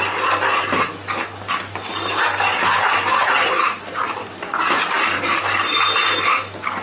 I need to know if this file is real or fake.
real